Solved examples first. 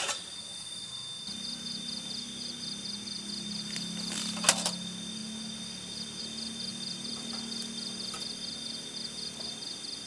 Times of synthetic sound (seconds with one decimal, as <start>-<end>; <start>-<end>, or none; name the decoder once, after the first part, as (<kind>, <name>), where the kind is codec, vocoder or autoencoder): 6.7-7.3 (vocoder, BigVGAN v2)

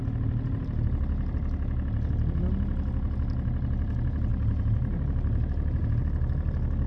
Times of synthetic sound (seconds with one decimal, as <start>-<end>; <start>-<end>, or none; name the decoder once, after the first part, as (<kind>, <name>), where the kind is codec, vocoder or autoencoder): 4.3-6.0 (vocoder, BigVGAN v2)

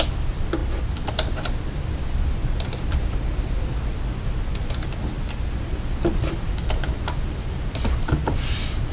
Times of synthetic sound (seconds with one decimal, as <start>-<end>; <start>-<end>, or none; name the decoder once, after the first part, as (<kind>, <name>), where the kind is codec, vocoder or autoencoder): 0.0-0.6 (vocoder, BigVGAN v2); 1.1-2.4; 3.1-3.7; 6.1-8.9

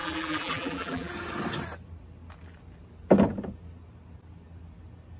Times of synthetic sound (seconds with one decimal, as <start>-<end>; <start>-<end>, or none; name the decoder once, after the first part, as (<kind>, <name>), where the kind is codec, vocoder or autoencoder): 0.0-1.1 (vocoder, BigVGAN v2)

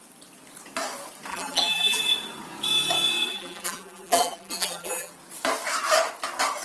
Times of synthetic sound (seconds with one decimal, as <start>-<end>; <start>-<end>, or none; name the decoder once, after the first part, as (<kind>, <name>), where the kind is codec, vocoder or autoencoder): 1.3-2.0 (vocoder, BigVGAN v2); 3.3-5.1

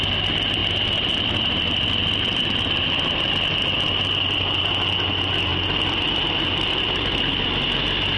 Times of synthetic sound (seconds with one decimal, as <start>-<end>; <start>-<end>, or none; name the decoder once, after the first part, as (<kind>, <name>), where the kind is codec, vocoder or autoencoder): 0.6-3.3 (vocoder, BigVGAN v2); 5.5-7.3

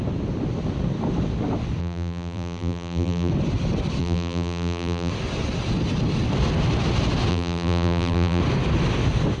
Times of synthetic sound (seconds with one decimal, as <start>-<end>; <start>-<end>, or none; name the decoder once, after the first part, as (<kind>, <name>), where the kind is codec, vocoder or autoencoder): 1.8-3.3 (vocoder, BigVGAN v2); 4.0-5.1; 7.3-8.4

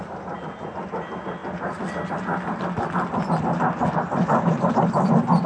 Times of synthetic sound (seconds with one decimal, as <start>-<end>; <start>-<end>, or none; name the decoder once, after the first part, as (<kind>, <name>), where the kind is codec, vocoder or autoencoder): none